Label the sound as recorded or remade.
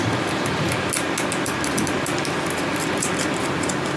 recorded